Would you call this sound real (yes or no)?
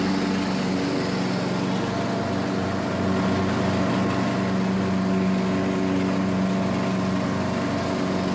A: yes